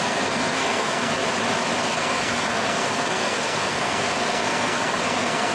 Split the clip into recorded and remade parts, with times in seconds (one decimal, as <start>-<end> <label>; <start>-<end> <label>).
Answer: 0.0-1.2 remade; 1.2-1.8 recorded; 1.8-5.5 remade